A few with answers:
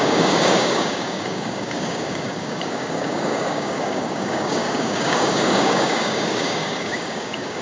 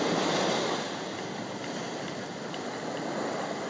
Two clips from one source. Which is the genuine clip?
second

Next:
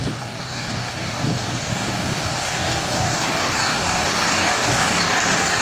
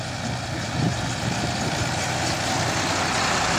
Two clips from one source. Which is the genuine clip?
second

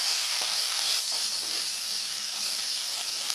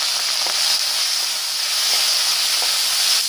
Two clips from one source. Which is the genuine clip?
second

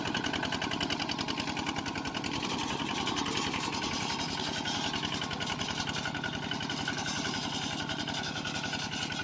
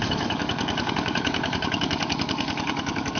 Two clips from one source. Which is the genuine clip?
first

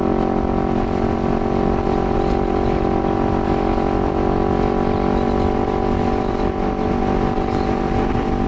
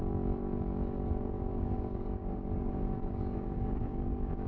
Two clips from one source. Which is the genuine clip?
first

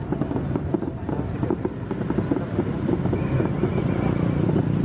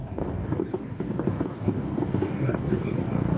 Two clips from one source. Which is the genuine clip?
first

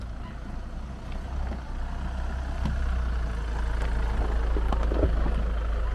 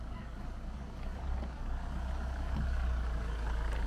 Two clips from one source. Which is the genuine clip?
first